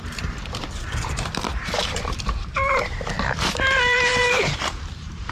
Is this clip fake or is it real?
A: fake